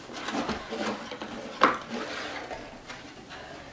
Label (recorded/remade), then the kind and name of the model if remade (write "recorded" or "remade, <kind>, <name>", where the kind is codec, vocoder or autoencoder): recorded